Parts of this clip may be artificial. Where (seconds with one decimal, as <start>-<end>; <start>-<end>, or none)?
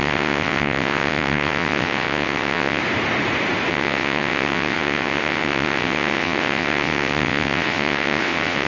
0.0-2.8; 3.7-8.7